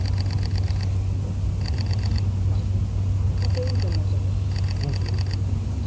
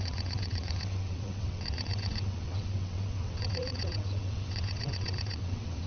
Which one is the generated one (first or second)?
second